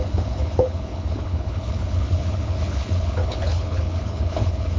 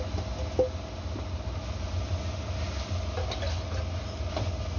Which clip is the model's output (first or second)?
first